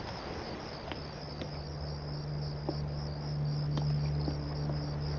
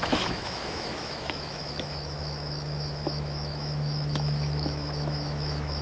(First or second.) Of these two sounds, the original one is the first